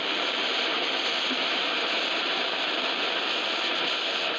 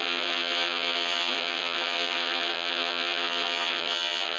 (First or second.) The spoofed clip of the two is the second